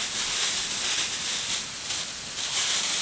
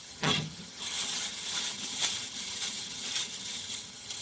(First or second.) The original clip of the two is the first